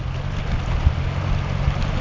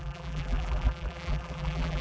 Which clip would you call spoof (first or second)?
second